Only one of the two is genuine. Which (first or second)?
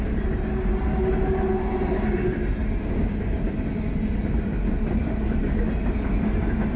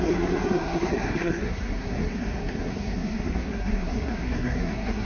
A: first